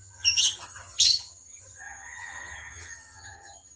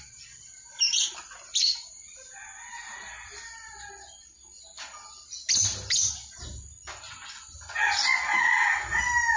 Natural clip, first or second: second